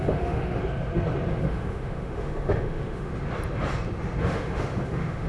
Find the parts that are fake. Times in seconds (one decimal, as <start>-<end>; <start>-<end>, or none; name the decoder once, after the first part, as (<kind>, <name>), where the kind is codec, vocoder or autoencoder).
0.0-0.6 (autoencoder, DAC-VAE); 1.3-3.1; 4.2-5.3

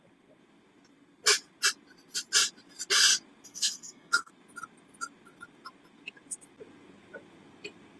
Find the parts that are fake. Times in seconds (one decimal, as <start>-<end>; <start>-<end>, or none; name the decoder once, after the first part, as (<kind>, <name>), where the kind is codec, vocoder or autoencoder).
3.5-4.3 (codec, SNAC)

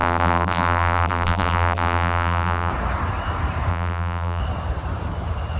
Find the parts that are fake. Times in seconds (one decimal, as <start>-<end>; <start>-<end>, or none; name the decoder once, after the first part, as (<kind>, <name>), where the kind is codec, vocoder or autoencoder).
0.0-2.7 (vocoder, BigVGAN v2); 3.7-4.4

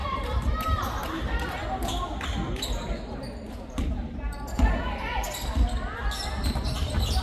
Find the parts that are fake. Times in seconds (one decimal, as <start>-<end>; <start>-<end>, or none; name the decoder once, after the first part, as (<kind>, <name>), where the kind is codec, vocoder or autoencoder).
0.0-1.3 (vocoder, BigVGAN v2)